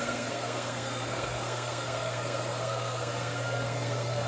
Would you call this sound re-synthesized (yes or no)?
yes